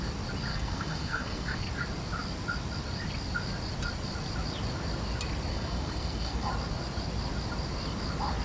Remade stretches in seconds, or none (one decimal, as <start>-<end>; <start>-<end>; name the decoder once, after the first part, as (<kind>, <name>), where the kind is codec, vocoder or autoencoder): 0.5-1.6 (codec, SNAC); 5.5-6.5